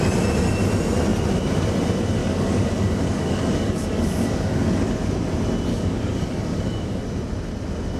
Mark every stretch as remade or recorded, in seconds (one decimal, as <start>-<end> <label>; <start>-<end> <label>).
0.0-2.2 recorded; 2.2-4.9 remade; 4.9-5.7 recorded; 5.7-7.0 remade; 7.0-8.0 recorded